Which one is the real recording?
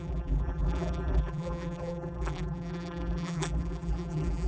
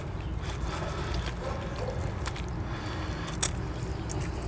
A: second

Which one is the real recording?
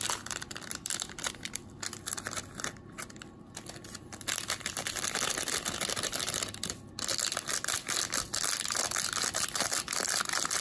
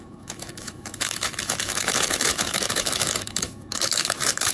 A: first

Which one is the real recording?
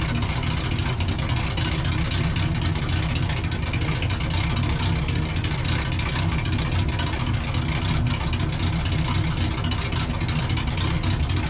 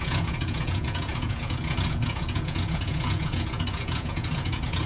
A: first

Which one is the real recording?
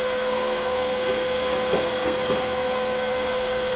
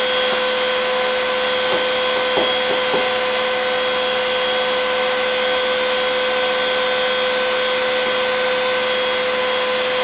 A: second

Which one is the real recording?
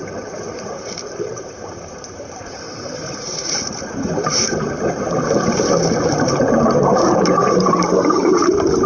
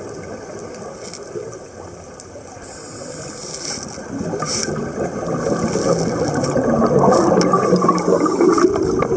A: second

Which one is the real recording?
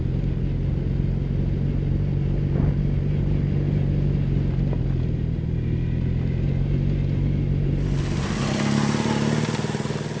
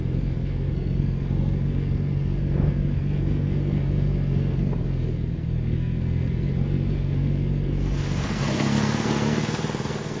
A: first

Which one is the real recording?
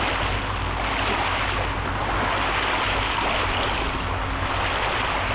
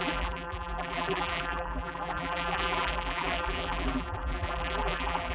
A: first